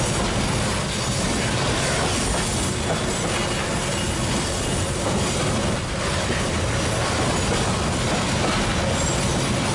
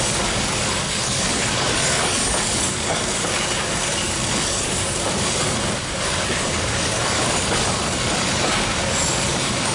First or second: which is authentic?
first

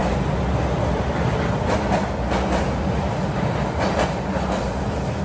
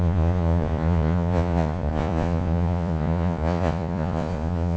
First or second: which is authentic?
first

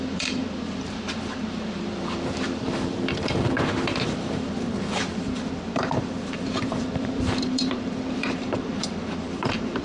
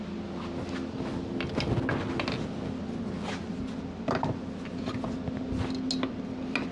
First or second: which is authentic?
second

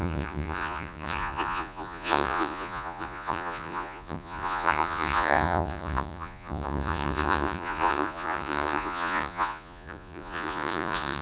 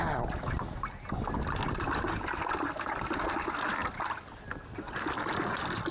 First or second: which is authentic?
second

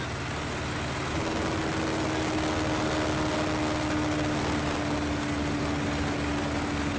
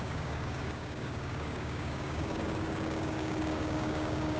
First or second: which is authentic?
first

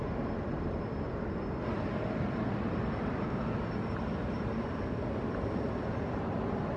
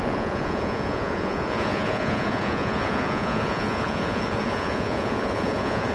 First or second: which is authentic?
first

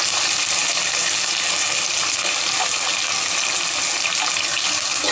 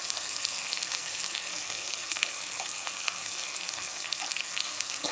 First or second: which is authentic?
first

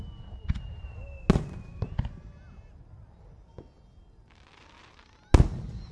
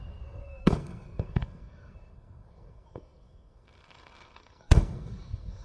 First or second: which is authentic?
first